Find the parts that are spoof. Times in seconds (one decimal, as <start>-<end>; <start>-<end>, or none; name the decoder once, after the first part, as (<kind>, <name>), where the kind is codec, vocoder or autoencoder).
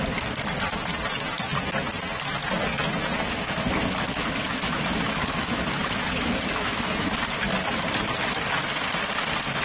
2.7-7.2 (autoencoder, DAC-VAE)